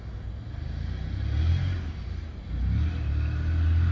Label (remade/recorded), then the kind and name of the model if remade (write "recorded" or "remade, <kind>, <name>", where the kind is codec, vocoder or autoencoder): recorded